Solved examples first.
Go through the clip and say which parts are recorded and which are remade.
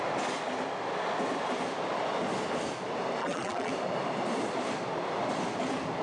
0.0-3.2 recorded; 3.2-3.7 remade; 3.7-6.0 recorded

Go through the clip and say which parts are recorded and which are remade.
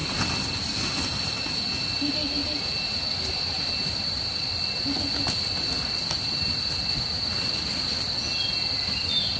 0.0-9.4 recorded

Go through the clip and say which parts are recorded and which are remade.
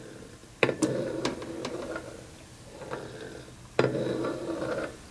0.0-0.4 remade; 0.4-1.0 recorded; 1.0-1.6 remade; 1.6-5.1 recorded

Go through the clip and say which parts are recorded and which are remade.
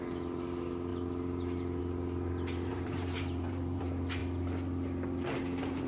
0.0-2.7 recorded; 2.7-3.8 remade; 3.8-5.9 recorded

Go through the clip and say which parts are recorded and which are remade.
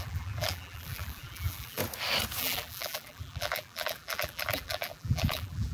0.0-1.8 remade; 1.8-2.4 recorded; 2.4-5.7 remade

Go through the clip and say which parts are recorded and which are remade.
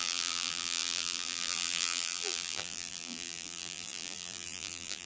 0.0-5.1 remade